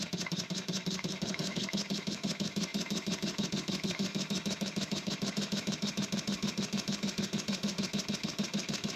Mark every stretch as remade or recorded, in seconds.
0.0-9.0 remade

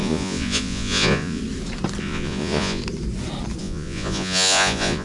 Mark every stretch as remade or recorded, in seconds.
0.0-1.4 remade; 1.4-2.0 recorded; 2.0-2.8 remade; 2.8-3.6 recorded; 3.6-5.0 remade